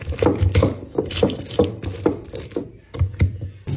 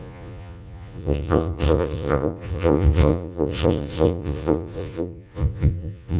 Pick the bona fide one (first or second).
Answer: first